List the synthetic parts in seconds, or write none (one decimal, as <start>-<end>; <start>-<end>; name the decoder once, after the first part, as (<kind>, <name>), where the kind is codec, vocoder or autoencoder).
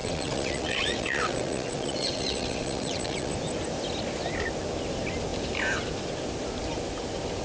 0.0-3.3 (vocoder, WaveNeXt)